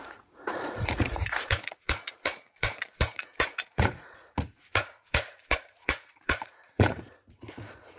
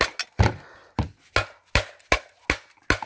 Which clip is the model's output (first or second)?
first